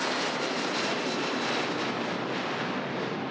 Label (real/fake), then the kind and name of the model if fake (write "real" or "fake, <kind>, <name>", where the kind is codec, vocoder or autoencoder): fake, vocoder, BigVGAN v2